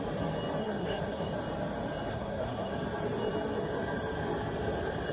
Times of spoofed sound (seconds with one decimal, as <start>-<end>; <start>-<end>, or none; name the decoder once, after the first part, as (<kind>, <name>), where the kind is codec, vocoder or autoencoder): 0.6-1.3 (codec, SNAC); 2.1-2.7